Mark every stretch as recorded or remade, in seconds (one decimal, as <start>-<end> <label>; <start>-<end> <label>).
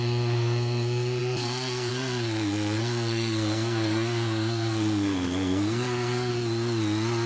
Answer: 0.0-6.3 remade; 6.3-7.3 recorded